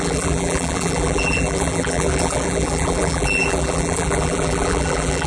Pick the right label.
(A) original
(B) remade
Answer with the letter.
B